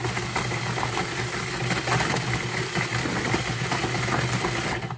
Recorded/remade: recorded